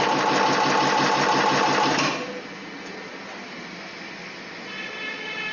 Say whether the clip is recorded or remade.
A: recorded